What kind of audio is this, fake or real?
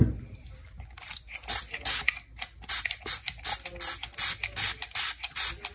real